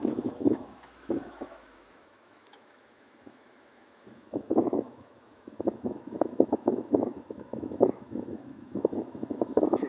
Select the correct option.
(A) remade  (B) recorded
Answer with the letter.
A